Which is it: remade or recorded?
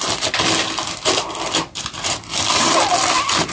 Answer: recorded